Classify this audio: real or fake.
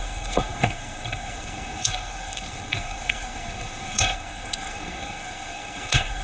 fake